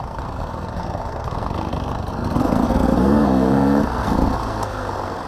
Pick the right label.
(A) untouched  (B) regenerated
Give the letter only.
B